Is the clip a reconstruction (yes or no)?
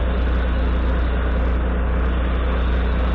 no